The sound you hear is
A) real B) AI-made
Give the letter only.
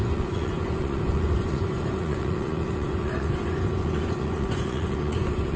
B